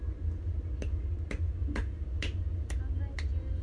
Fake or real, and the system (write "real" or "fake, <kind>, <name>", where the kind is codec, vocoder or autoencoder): real